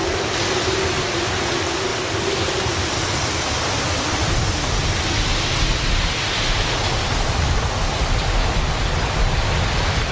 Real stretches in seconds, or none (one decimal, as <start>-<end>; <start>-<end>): 0.0-10.1